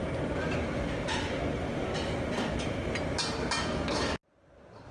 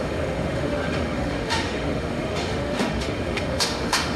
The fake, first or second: second